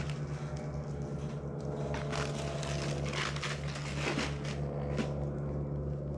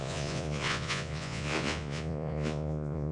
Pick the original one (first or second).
first